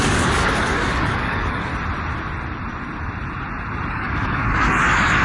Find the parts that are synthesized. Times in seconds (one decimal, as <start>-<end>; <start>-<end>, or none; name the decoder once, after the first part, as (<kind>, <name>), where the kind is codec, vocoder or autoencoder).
0.0-1.7 (codec, DAC); 3.9-5.2